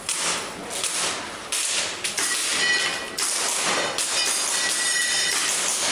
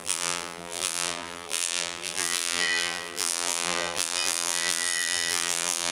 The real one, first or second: first